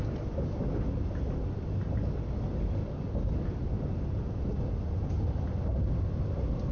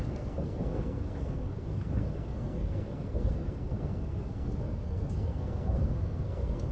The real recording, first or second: first